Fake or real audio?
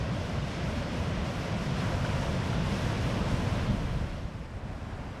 real